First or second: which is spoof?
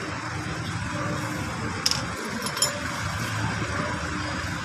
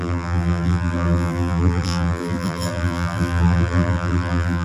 second